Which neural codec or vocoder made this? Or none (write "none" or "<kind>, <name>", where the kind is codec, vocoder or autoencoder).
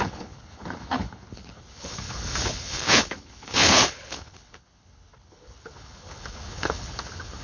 codec, HILCodec